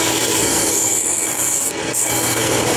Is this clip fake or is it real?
fake